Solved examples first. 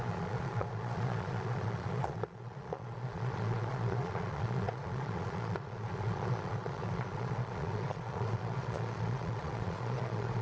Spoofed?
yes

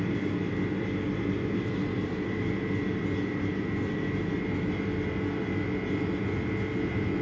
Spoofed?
no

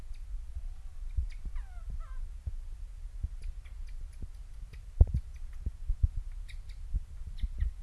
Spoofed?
no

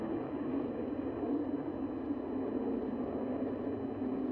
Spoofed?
no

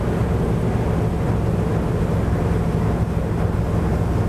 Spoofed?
no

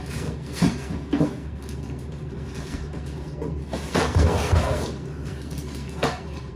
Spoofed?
yes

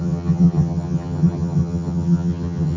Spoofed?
yes